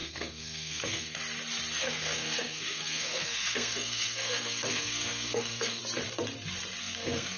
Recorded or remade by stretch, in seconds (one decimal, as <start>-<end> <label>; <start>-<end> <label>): 0.0-1.2 remade; 1.2-1.8 recorded; 1.8-5.8 remade; 5.8-6.8 recorded; 6.8-7.4 remade